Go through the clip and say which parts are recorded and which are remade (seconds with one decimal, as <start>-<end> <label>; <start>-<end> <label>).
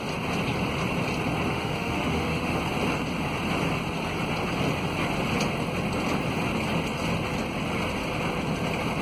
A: 0.0-1.5 recorded; 1.5-2.6 remade; 2.6-9.0 recorded